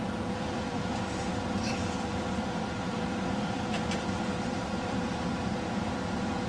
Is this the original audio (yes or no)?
no